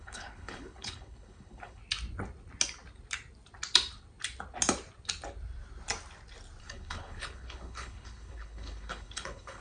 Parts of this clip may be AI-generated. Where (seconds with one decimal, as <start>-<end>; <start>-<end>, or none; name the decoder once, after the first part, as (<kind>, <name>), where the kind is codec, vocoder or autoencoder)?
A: 0.0-1.8 (codec, HILCodec); 6.6-9.6